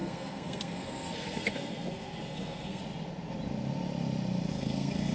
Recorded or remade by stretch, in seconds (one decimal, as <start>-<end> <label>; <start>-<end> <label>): 0.0-2.8 remade; 2.8-4.5 recorded; 4.5-5.1 remade

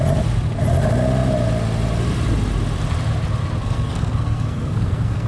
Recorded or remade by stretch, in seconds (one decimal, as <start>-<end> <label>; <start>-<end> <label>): 0.0-3.6 recorded; 3.6-5.3 remade